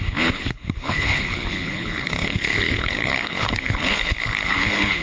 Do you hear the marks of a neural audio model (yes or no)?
yes